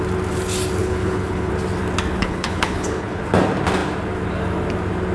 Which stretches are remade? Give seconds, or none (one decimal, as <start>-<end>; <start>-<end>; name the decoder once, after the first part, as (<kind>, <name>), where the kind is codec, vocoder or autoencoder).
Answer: 0.8-1.5 (codec, HILCodec); 2.2-3.2